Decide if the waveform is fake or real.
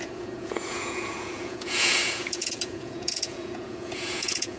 fake